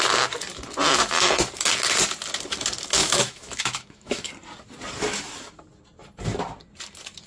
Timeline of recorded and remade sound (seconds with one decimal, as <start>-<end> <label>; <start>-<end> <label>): 0.0-3.0 recorded; 3.0-4.3 remade; 4.3-7.3 recorded